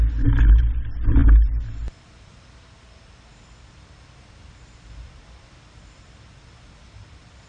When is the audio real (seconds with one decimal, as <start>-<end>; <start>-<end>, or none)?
0.0-7.5

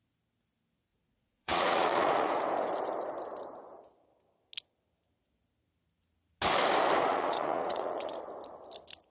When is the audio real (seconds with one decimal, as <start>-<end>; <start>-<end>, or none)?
0.0-0.9; 2.4-7.1; 8.2-9.1

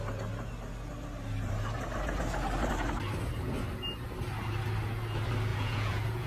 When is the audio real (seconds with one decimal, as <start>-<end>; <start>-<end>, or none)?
0.0-5.5

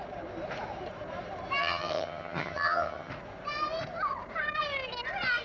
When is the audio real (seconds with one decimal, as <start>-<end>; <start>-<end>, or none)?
0.0-1.6; 3.1-5.4

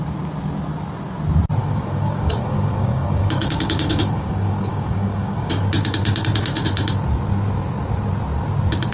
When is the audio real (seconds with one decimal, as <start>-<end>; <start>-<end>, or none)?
0.0-1.6; 5.7-8.9

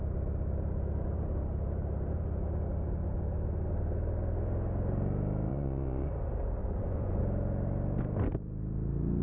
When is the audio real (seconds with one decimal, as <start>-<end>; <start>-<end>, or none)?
0.0-5.5; 6.1-6.6; 7.2-9.2

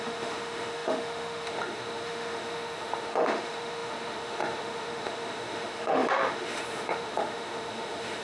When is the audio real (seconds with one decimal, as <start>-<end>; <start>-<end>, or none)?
none

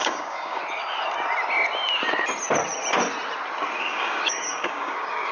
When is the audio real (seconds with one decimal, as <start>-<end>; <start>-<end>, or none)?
0.6-3.8